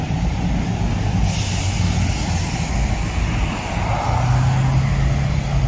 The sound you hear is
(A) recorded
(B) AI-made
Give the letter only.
A